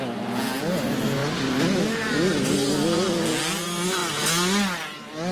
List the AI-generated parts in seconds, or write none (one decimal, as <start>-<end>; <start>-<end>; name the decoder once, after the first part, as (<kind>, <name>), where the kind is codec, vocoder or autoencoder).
none

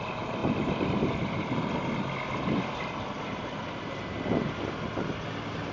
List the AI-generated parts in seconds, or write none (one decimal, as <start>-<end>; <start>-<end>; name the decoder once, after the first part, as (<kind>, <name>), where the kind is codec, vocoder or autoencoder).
none

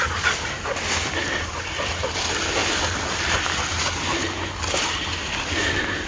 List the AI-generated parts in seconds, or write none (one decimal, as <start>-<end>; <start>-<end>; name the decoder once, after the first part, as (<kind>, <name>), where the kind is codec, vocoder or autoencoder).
none

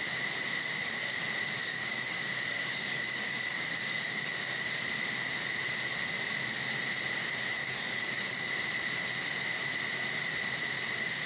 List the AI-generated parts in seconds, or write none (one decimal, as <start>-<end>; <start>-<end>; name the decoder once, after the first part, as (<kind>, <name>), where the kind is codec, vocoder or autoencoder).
0.6-1.2 (codec, DAC); 1.6-4.7; 7.6-8.5

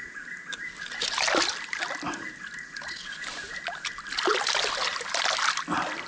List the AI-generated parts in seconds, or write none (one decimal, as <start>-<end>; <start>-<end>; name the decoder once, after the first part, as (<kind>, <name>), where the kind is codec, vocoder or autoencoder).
none

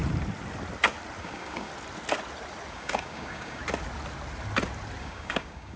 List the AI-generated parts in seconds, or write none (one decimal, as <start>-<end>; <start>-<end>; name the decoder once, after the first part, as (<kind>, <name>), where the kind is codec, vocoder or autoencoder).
1.2-1.7 (codec, DAC); 2.7-3.6; 5.0-5.8